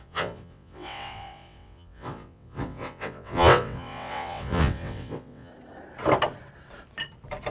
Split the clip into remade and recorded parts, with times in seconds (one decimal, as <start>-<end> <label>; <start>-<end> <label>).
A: 0.0-5.5 remade; 5.5-7.5 recorded